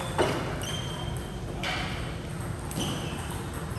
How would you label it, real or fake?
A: real